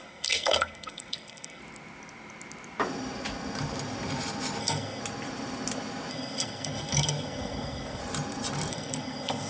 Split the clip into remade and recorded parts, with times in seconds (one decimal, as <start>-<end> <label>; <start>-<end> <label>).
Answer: 0.0-1.6 remade; 1.6-4.6 recorded; 4.6-5.0 remade; 5.0-6.1 recorded; 6.1-8.0 remade; 8.0-8.7 recorded; 8.7-9.5 remade